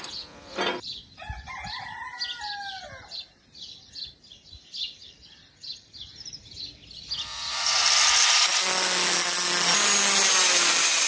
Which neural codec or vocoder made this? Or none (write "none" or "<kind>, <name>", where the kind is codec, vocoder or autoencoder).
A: none